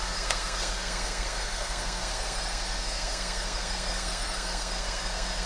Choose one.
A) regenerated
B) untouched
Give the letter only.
A